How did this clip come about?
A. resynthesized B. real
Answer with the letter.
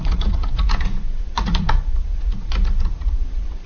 A